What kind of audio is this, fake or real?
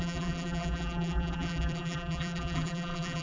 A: fake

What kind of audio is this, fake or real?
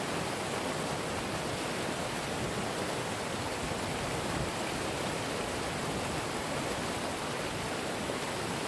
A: real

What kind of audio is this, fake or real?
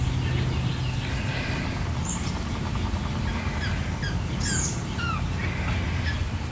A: real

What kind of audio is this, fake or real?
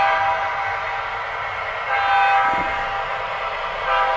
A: real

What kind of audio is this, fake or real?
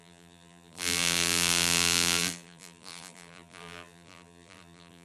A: fake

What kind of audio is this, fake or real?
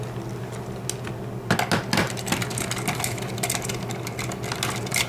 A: real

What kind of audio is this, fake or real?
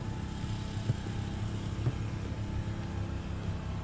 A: real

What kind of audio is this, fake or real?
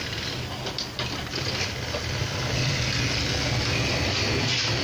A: real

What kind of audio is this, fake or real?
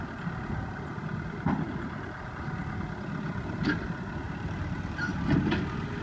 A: real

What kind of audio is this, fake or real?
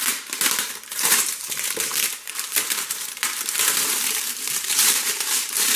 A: fake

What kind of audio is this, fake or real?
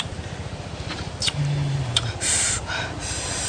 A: fake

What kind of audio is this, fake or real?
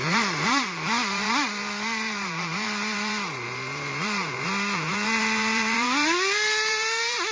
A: fake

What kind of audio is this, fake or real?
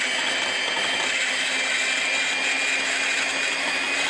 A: real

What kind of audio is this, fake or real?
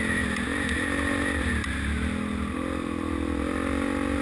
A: real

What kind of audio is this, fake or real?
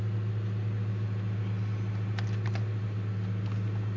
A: real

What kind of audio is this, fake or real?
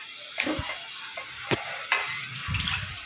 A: real